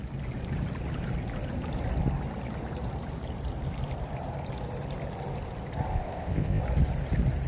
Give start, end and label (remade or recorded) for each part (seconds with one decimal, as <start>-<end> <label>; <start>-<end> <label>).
0.0-5.9 recorded; 5.9-6.6 remade; 6.6-7.5 recorded